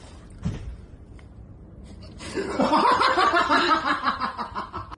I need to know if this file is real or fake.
fake